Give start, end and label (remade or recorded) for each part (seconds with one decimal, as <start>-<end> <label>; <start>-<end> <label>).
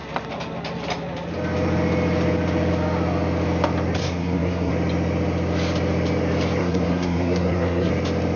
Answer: 0.0-4.0 recorded; 4.0-4.7 remade; 4.7-6.6 recorded; 6.6-7.9 remade; 7.9-8.4 recorded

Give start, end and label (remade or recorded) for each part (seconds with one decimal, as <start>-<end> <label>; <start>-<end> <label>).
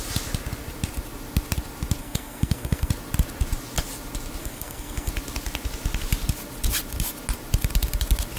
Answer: 0.0-2.0 recorded; 2.0-2.9 remade; 2.9-4.4 recorded; 4.4-5.1 remade; 5.1-8.4 recorded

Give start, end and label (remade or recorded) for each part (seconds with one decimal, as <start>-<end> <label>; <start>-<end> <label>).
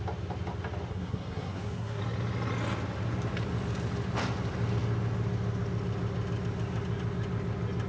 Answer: 0.0-0.9 recorded; 0.9-2.0 remade; 2.0-7.9 recorded